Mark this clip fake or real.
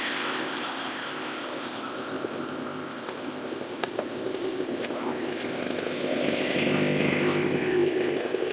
fake